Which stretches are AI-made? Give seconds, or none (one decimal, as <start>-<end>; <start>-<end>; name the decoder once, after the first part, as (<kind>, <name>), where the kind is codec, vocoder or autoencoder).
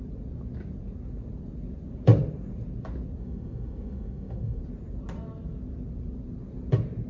3.2-4.6 (autoencoder, DAC-VAE)